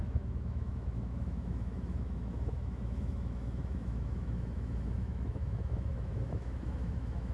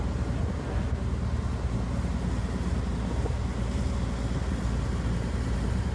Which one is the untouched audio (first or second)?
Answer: second